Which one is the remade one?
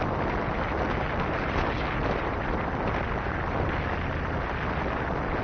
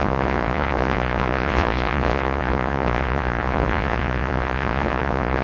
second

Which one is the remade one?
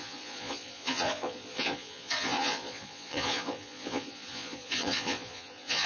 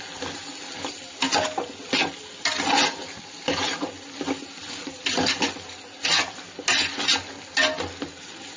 first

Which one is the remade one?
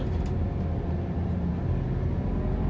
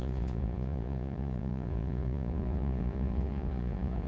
second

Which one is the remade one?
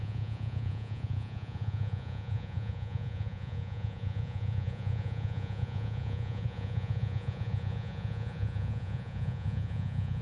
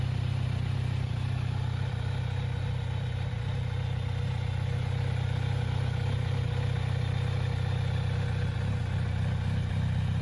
first